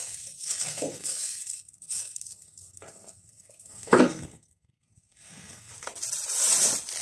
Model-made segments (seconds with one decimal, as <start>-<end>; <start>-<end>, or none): 0.0-5.7